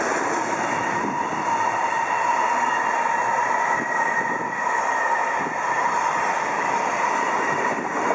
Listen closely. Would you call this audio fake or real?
real